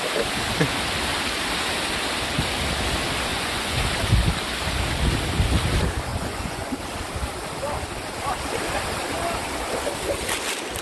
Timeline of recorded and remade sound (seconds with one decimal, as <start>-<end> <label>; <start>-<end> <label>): 0.0-3.3 recorded; 3.3-3.8 remade; 3.8-6.1 recorded; 6.1-6.7 remade; 6.7-10.8 recorded